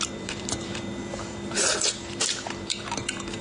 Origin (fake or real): fake